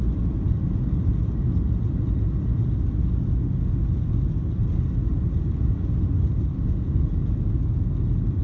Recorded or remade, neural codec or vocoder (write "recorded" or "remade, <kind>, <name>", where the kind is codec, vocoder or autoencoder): recorded